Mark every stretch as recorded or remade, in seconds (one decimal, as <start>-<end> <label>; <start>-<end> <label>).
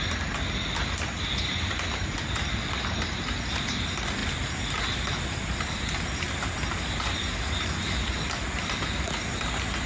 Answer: 0.0-9.9 recorded